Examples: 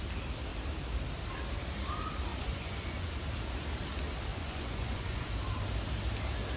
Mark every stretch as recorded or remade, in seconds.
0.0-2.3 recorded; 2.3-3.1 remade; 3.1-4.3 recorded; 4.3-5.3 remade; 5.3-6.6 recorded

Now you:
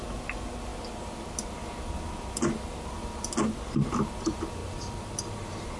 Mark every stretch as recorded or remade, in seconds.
0.0-5.8 recorded

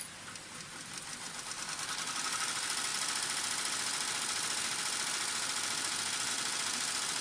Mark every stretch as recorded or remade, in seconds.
0.0-7.2 recorded

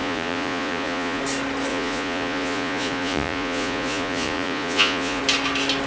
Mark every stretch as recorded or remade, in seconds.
0.0-1.2 remade; 1.2-1.7 recorded; 1.7-5.2 remade; 5.2-5.9 recorded

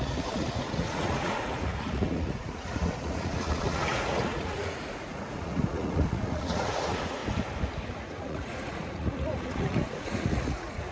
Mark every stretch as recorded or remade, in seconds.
0.0-7.2 remade; 7.2-7.9 recorded; 7.9-10.9 remade

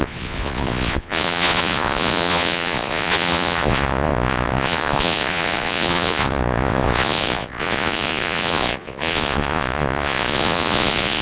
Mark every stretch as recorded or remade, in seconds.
0.0-11.2 remade

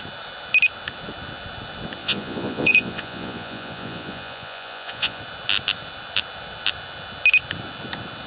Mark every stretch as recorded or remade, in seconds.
0.0-2.0 recorded; 2.0-5.2 remade; 5.2-8.3 recorded